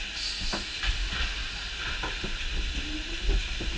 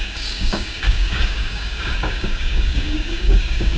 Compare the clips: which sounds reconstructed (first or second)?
second